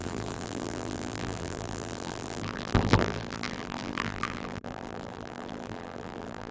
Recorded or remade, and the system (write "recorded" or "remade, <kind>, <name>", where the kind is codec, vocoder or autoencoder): remade, vocoder, BigVGAN v2